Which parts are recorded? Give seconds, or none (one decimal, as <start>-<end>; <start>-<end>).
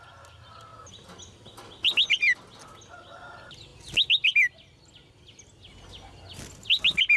0.0-7.2